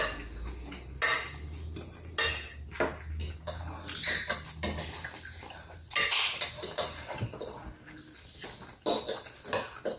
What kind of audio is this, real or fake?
real